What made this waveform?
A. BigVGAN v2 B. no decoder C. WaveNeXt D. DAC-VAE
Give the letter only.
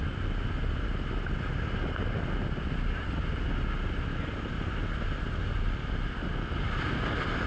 B